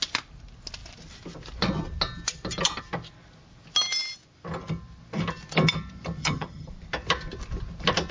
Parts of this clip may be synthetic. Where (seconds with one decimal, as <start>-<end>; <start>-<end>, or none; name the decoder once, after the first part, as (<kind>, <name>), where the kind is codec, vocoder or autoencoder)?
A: 6.2-6.7 (vocoder, HiFi-GAN)